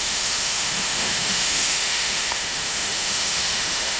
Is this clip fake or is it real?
fake